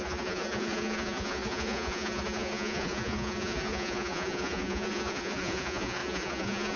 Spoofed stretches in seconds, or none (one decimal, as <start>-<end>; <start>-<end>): 0.0-6.8